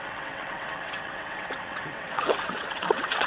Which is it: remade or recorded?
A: remade